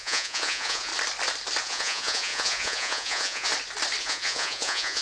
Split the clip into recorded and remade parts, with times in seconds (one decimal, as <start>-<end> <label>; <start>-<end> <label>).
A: 0.0-0.9 remade; 0.9-1.6 recorded; 1.6-3.5 remade; 3.5-4.0 recorded; 4.0-5.0 remade